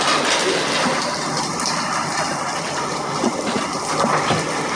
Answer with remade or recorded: recorded